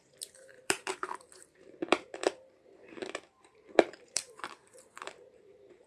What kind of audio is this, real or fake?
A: fake